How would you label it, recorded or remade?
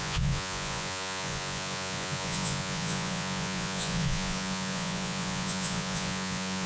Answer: remade